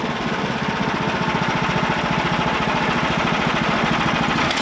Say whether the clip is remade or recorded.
recorded